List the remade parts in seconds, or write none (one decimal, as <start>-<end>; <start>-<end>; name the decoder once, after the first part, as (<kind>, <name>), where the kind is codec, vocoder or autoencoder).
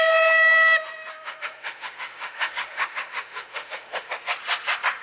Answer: 1.1-4.1 (autoencoder, DAC-VAE)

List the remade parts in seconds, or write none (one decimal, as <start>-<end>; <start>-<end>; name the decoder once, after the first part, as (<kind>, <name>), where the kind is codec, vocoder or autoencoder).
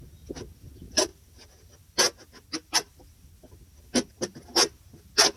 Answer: none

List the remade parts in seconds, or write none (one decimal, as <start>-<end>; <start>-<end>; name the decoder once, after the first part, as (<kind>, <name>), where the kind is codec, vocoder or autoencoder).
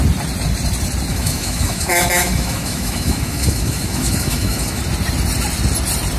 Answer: 1.1-4.8 (autoencoder, DAC-VAE)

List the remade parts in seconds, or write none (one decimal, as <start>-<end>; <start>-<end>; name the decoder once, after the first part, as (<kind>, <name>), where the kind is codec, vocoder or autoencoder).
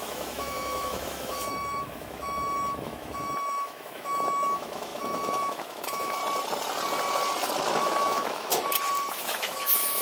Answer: 0.0-6.2 (autoencoder, DAC-VAE); 7.8-8.5; 9.1-10.0